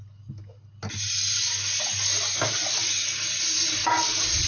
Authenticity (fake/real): real